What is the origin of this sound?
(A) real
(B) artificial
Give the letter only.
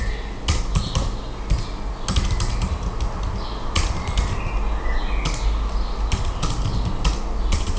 A